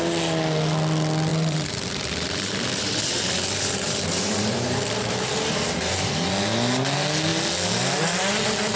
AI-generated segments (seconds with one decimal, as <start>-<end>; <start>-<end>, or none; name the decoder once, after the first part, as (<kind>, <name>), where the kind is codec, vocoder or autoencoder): 1.3-6.1 (vocoder, BigVGAN v2)